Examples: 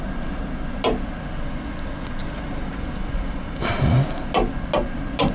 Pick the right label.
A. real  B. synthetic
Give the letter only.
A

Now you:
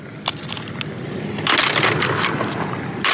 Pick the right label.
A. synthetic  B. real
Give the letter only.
B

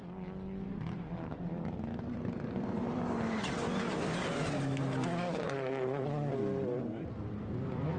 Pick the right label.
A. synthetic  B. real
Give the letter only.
B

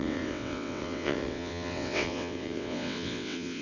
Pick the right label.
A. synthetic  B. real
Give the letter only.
A